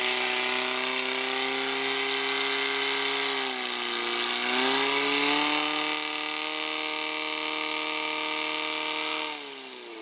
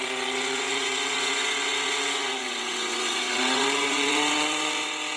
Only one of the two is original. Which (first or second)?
first